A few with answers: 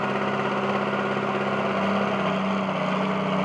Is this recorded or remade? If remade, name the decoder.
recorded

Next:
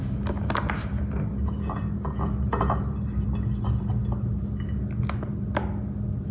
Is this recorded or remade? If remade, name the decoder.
recorded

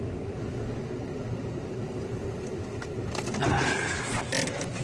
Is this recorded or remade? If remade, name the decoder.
recorded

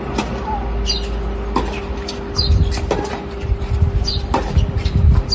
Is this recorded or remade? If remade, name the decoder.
recorded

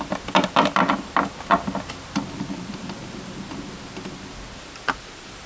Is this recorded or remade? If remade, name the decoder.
recorded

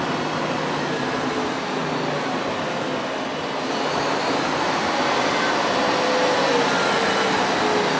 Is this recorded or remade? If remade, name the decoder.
recorded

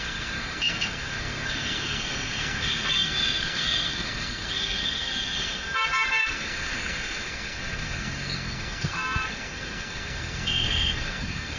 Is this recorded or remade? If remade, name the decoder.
remade, codec, SNAC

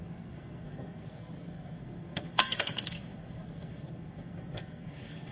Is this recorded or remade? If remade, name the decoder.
remade, codec, SNAC